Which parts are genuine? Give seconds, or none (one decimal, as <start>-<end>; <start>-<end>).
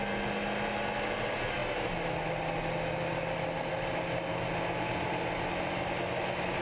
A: 0.0-6.6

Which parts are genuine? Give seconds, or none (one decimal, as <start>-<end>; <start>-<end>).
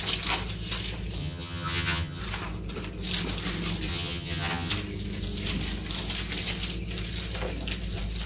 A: 0.0-1.2; 2.2-3.9; 4.7-8.3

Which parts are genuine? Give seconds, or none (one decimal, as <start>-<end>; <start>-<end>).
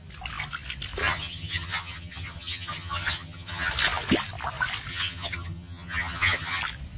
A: 0.0-1.0; 3.7-4.9; 6.6-7.0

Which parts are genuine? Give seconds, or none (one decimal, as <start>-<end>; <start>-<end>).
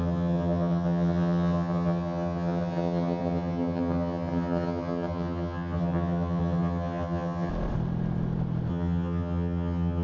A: 7.5-8.7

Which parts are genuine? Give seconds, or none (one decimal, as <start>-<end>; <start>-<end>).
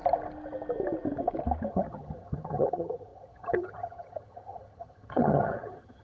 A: 0.0-1.7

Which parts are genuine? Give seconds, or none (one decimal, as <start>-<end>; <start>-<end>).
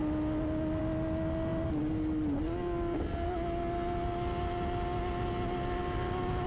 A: 0.0-6.5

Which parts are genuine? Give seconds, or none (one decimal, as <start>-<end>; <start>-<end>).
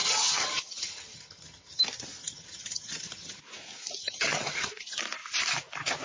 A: 1.8-2.2; 3.4-4.0; 4.7-6.0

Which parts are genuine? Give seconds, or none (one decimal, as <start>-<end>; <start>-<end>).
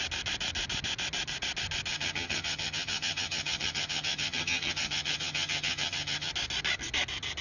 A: 0.0-1.9; 6.3-7.4